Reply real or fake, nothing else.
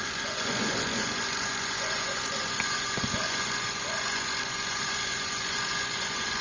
fake